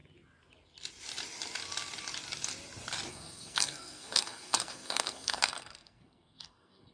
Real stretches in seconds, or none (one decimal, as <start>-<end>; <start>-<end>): 0.0-3.1